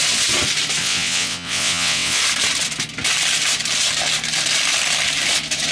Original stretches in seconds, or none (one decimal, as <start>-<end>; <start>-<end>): 0.0-0.8; 2.2-5.7